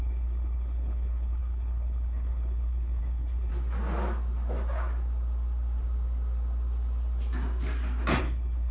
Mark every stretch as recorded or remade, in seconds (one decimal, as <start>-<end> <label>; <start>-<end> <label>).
0.0-3.5 remade; 3.5-8.2 recorded; 8.2-8.7 remade

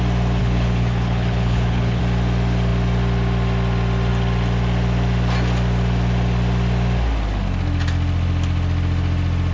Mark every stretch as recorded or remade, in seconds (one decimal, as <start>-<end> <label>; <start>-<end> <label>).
0.0-0.4 recorded; 0.4-2.0 remade; 2.0-9.5 recorded

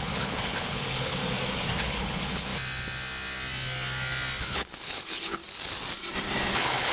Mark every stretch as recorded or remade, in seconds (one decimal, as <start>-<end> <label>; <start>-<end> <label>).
0.0-1.2 remade; 1.2-1.8 recorded; 1.8-2.5 remade; 2.5-4.4 recorded; 4.4-5.4 remade; 5.4-6.5 recorded; 6.5-6.9 remade

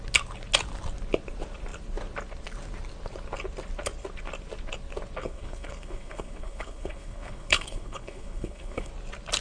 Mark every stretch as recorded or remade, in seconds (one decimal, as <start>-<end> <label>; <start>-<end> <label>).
0.0-5.2 recorded; 5.2-8.9 remade; 8.9-9.4 recorded

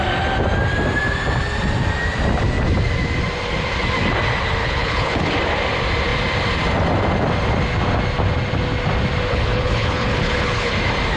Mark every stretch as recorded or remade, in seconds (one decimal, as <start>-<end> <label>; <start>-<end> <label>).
0.0-4.6 recorded; 4.6-5.3 remade; 5.3-9.3 recorded; 9.3-10.7 remade; 10.7-11.2 recorded